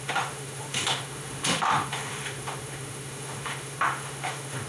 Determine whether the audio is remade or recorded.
remade